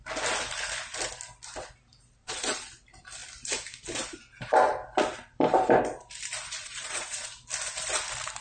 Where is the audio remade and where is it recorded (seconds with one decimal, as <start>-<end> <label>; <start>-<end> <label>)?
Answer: 0.0-2.2 recorded; 2.2-2.7 remade; 2.7-6.6 recorded; 6.6-7.3 remade; 7.3-8.4 recorded